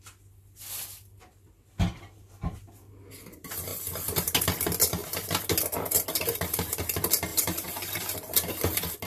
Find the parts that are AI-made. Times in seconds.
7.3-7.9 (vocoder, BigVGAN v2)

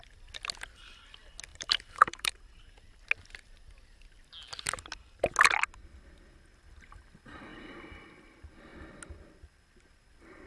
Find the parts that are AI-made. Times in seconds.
1.5-2.6 (vocoder, BigVGAN v2); 7.5-8.1

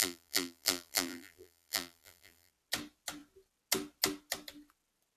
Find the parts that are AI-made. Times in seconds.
0.0-2.5 (vocoder, BigVGAN v2)

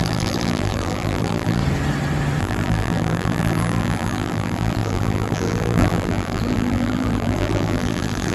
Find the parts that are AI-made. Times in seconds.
0.0-1.6 (vocoder, BigVGAN v2); 2.4-8.3

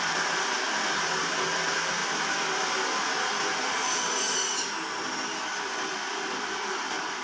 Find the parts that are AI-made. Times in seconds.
0.0-2.0 (vocoder, BigVGAN v2); 6.3-7.2

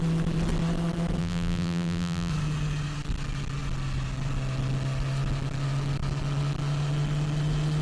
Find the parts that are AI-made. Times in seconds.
1.2-2.3 (vocoder, BigVGAN v2)

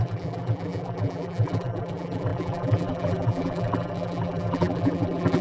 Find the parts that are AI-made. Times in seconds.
0.0-5.4 (vocoder, BigVGAN v2)